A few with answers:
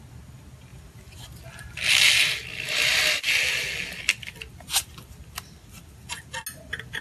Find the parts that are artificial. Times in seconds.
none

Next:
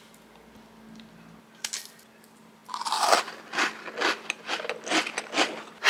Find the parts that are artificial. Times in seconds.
none

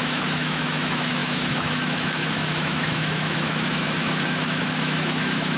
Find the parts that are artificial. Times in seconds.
0.0-5.6 (autoencoder, DAC-VAE)

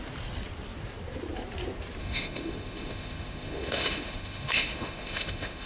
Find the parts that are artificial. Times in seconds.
2.0-5.7 (autoencoder, DAC-VAE)

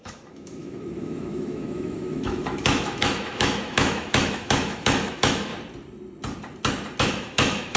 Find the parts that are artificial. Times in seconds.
0.0-5.5 (autoencoder, DAC-VAE); 7.0-7.8